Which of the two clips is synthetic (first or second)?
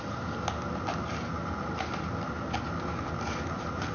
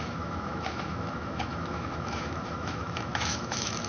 second